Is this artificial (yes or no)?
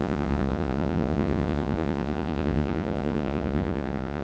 yes